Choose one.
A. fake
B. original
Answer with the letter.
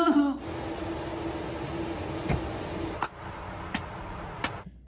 B